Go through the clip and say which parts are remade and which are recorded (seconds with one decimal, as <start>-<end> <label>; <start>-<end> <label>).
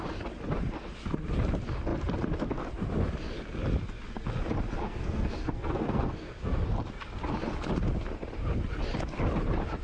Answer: 0.0-4.8 recorded; 4.8-6.5 remade; 6.5-9.8 recorded